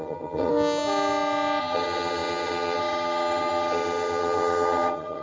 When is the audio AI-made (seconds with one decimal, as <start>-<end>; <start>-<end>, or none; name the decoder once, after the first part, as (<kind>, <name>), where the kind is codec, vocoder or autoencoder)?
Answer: 0.0-0.5 (vocoder, HiFi-GAN); 1.6-5.2

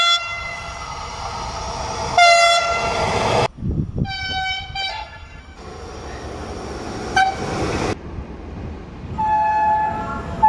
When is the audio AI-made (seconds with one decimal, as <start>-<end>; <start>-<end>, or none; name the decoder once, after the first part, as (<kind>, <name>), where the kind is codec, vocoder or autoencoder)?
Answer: 4.9-5.4 (codec, SNAC)

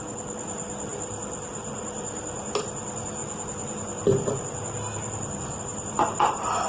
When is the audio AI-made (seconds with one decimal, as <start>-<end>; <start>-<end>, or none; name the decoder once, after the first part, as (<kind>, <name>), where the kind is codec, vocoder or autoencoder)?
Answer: 0.0-3.2 (vocoder, BigVGAN v2); 5.6-6.7